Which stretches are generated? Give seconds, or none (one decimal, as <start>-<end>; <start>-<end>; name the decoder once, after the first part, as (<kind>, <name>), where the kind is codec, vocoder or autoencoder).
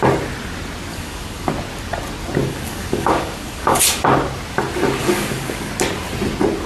0.9-1.5 (codec, DAC); 2.4-3.8; 5.0-5.7